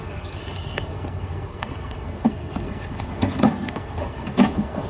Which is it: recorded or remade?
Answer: remade